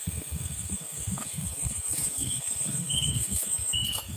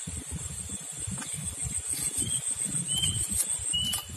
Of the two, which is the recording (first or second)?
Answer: second